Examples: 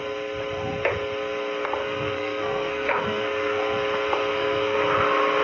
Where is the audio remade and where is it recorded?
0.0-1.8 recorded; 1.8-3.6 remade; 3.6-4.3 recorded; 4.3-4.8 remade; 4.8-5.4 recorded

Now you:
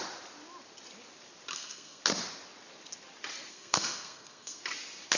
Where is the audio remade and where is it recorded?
0.0-1.5 recorded; 1.5-2.0 remade; 2.0-3.5 recorded; 3.5-4.6 remade; 4.6-5.2 recorded

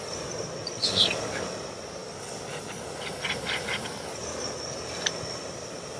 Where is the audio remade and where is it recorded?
0.0-6.0 recorded

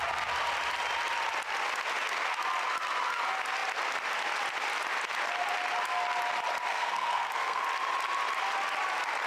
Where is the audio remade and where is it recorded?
0.0-6.7 recorded; 6.7-7.6 remade; 7.6-9.3 recorded

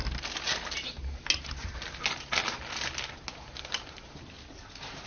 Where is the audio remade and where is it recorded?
0.0-5.1 recorded

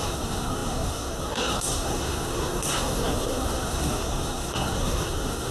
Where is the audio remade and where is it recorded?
0.0-5.5 remade

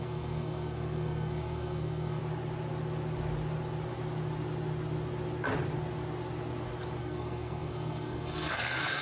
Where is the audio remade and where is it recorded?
0.0-2.2 remade; 2.2-7.0 recorded; 7.0-9.0 remade

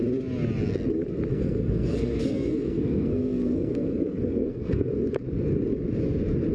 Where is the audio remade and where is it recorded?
0.0-1.3 recorded; 1.3-4.9 remade; 4.9-6.5 recorded